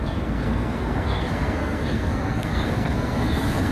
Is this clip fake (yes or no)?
yes